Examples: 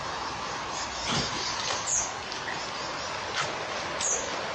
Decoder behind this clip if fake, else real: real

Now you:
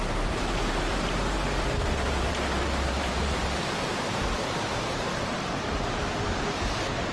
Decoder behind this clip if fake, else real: fake, vocoder, BigVGAN v2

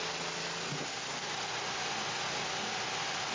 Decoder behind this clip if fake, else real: real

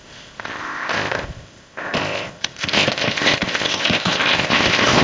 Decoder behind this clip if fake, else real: fake, codec, ZipCodec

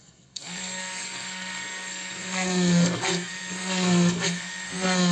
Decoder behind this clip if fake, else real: fake, codec, SNAC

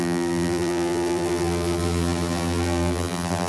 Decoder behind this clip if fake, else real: fake, vocoder, BigVGAN v2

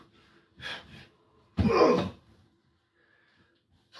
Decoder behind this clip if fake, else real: real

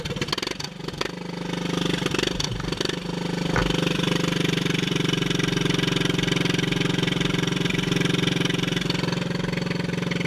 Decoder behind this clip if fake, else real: real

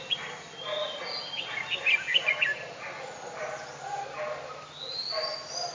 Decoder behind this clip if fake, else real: real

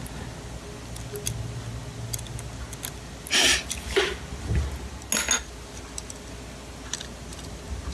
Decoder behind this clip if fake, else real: real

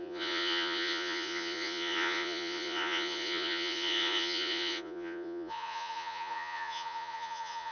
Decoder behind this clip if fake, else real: fake, vocoder, Vocos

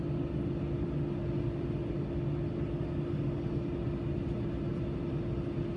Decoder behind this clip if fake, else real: real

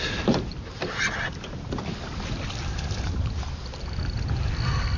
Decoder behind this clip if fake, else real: real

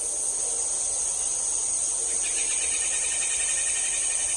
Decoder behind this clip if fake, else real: real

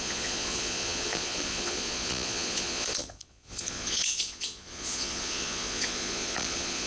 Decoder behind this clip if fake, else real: fake, vocoder, Vocos